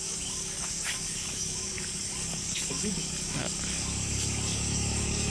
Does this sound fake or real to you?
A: fake